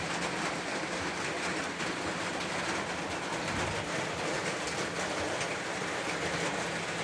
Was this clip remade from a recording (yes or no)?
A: no